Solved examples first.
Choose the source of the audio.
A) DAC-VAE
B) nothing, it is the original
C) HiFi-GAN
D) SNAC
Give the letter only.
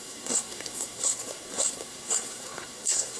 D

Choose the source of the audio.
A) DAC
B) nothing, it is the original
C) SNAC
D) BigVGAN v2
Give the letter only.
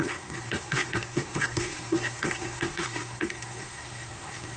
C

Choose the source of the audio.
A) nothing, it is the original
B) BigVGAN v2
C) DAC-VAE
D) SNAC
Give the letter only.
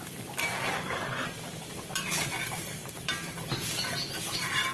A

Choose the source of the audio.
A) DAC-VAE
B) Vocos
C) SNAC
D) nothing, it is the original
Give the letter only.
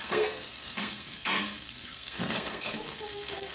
C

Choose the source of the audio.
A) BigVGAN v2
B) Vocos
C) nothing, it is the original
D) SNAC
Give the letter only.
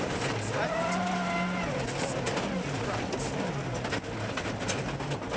C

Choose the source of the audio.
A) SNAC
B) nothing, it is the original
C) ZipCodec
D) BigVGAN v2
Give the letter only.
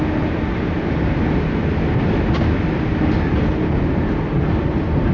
B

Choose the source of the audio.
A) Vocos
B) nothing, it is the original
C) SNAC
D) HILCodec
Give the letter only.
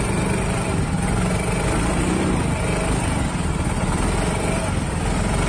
B